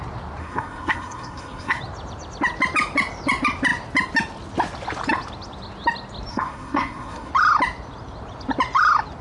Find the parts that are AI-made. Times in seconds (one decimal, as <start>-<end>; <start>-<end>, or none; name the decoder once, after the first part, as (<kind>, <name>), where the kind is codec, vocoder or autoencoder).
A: 0.4-1.8 (codec, SNAC); 6.3-7.3